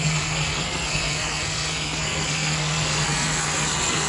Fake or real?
fake